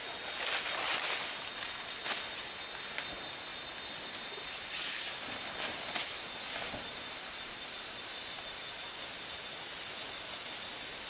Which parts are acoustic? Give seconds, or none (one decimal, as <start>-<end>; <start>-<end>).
0.0-11.1

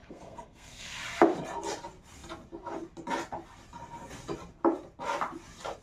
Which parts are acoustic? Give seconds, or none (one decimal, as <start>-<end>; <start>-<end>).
1.0-5.8

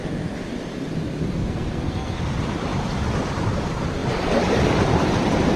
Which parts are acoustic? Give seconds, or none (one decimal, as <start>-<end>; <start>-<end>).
0.0-1.4; 2.2-5.6

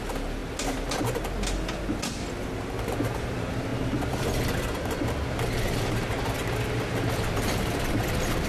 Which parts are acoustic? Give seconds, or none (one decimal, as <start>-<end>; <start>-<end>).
0.0-8.5